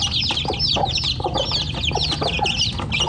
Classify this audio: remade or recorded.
recorded